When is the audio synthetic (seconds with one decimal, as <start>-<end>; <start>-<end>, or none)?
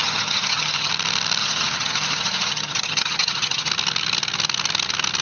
0.0-0.9; 1.4-3.7